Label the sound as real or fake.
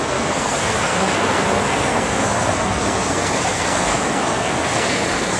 fake